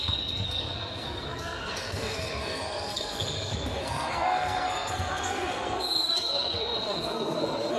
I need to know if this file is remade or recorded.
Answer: remade